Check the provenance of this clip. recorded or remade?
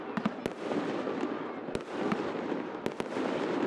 recorded